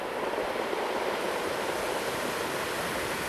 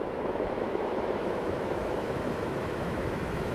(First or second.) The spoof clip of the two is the second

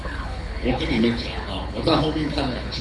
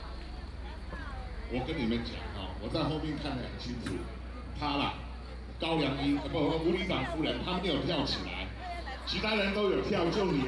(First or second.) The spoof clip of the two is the first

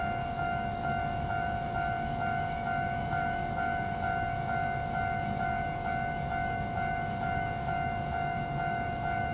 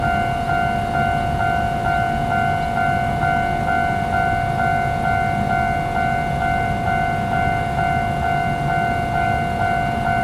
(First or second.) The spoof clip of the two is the first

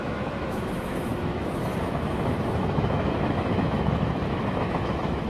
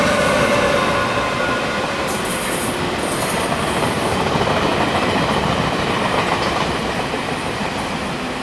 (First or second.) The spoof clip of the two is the first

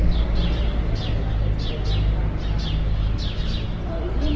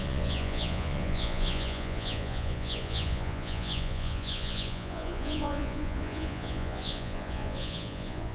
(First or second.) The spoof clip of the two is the second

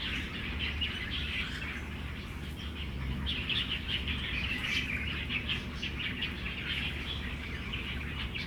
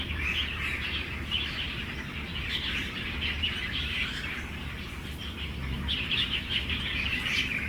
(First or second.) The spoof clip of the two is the second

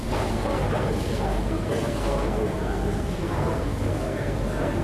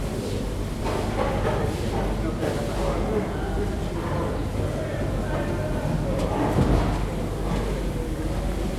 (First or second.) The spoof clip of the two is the first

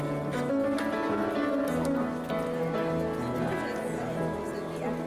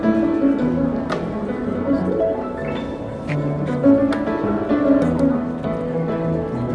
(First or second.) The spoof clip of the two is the second